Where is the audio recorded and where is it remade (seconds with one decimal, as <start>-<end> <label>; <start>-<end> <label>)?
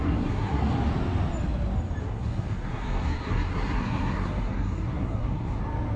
0.0-0.7 remade; 0.7-2.0 recorded; 2.0-5.6 remade; 5.6-6.0 recorded